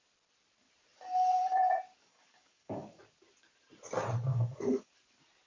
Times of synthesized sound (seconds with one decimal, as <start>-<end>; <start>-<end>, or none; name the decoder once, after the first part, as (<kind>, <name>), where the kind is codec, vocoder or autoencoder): 2.0-3.0 (codec, DAC); 4.3-4.9